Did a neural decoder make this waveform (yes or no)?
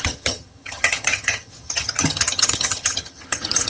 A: yes